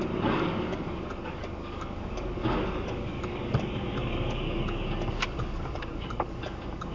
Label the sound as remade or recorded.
remade